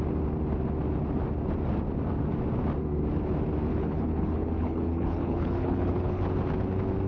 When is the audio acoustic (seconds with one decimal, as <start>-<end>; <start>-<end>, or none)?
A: 0.0-3.7; 6.2-7.1